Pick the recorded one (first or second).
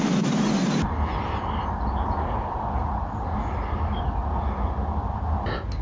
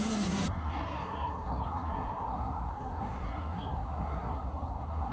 first